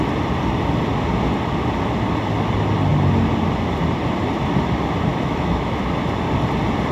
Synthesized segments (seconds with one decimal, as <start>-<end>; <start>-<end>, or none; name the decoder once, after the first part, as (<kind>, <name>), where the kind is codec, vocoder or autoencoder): 5.1-5.9 (autoencoder, DAC-VAE)